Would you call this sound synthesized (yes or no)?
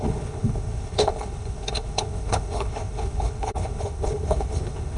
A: yes